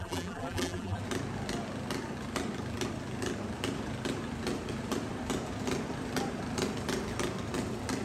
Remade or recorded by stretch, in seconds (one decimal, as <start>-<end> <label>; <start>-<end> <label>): 0.0-1.0 remade; 1.0-8.0 recorded